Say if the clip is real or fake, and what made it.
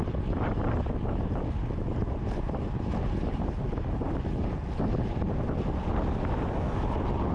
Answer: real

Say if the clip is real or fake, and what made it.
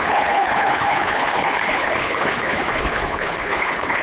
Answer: fake, codec, HILCodec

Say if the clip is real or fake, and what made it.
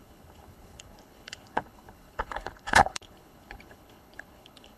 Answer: fake, codec, HILCodec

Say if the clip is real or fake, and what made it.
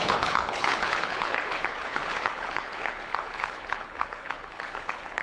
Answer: fake, codec, HILCodec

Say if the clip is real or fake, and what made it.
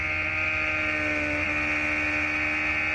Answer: real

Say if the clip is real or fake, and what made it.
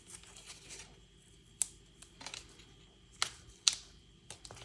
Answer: real